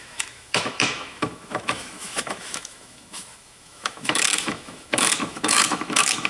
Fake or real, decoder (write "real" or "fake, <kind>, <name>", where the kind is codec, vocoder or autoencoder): fake, autoencoder, DAC-VAE